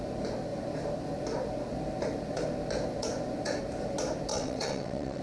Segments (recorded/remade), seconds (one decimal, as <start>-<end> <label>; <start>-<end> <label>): 0.0-4.3 recorded; 4.3-5.2 remade